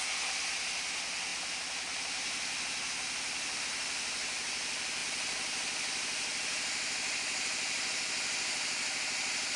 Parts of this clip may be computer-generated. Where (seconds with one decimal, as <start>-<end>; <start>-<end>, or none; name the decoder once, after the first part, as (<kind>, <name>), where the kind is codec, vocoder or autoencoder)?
none